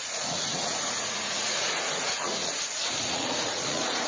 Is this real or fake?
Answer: fake